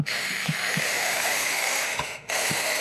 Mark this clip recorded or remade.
remade